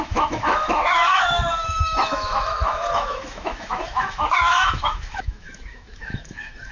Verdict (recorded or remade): remade